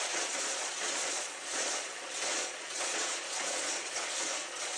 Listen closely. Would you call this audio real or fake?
fake